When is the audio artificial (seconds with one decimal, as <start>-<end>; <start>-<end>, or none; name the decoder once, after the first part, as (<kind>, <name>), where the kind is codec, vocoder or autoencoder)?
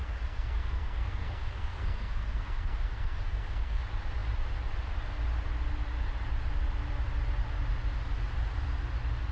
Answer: 0.0-3.8 (codec, SNAC)